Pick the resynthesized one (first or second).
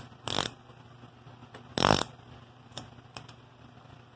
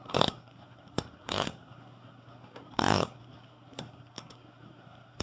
second